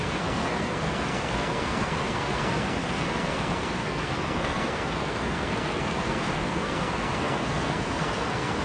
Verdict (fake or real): fake